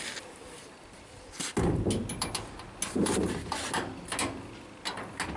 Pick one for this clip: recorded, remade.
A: recorded